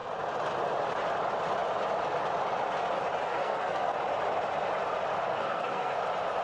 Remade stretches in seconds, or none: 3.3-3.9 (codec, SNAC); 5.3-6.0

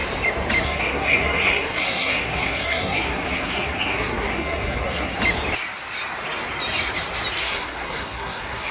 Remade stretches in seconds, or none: 0.6-5.2 (codec, SNAC); 7.4-8.7

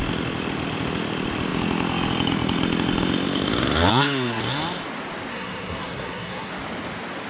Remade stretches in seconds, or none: 3.9-4.4 (codec, SNAC); 5.3-6.5

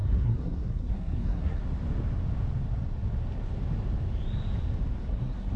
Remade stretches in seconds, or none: 0.0-1.6 (codec, SNAC); 5.0-5.6

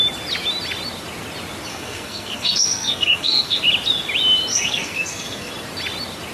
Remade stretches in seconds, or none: 1.7-3.6 (codec, SNAC); 4.5-5.5

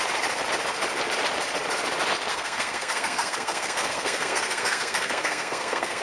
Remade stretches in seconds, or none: 2.3-6.0 (codec, SNAC)

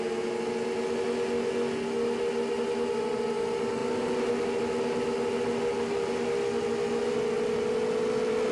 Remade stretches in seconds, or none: none

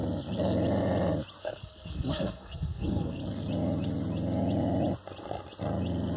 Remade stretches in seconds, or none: 1.4-3.2 (codec, SNAC)